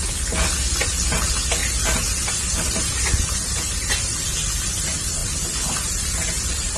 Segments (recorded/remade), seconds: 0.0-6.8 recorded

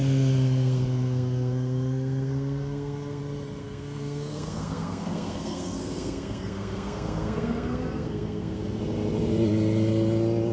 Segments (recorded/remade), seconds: 0.0-3.2 remade; 3.2-3.6 recorded; 3.6-8.8 remade; 8.8-10.5 recorded

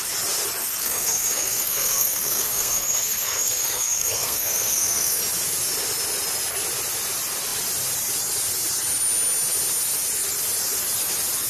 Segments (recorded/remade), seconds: 0.0-0.6 recorded; 0.6-5.2 remade; 5.2-11.5 recorded

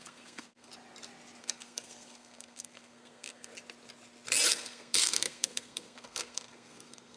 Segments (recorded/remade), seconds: 0.0-0.7 remade; 0.7-1.4 recorded; 1.4-3.5 remade; 3.5-4.5 recorded; 4.5-7.2 remade

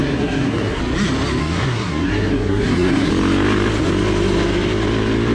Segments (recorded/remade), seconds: 0.0-0.8 remade; 0.8-1.4 recorded; 1.4-3.1 remade; 3.1-5.3 recorded